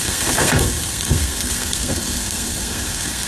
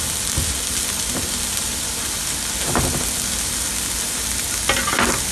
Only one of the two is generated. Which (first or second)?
first